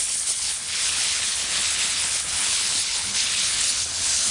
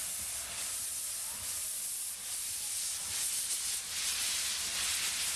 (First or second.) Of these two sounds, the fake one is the first